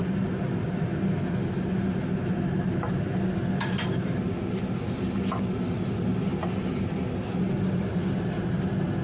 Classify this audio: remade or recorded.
recorded